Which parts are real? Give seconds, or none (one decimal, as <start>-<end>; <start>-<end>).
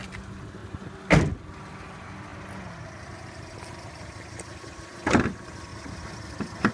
0.6-1.6; 2.3-3.0; 5.7-6.7